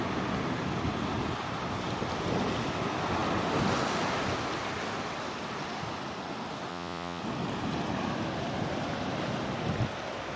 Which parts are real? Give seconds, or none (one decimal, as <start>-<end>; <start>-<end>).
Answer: 0.0-6.7; 7.2-10.4